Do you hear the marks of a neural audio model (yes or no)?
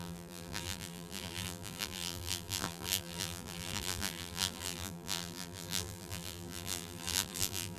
yes